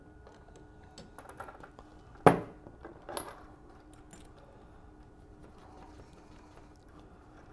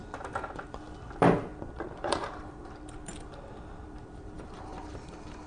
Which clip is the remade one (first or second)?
second